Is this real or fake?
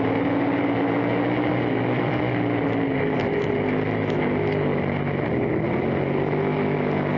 real